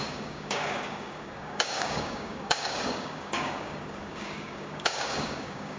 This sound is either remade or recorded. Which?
remade